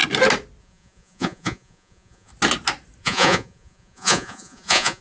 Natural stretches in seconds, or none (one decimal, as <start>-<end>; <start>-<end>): 0.0-0.6; 2.3-3.0